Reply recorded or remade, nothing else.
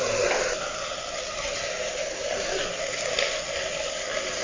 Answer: recorded